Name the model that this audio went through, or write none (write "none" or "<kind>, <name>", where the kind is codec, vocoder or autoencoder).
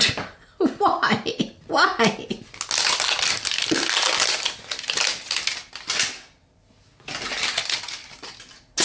none